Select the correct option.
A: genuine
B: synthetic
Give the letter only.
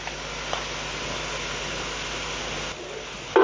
A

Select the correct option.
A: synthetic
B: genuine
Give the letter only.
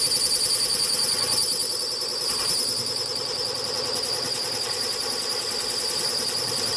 B